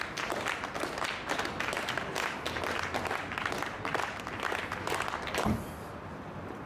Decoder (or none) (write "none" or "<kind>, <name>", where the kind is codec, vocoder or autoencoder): none